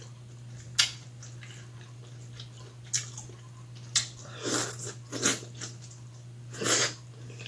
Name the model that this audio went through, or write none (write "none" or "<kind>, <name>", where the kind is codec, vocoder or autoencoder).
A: none